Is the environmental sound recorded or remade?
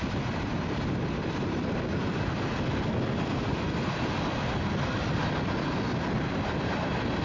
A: recorded